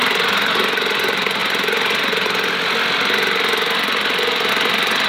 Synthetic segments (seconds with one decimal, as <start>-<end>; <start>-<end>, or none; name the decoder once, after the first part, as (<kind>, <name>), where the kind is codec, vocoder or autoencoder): none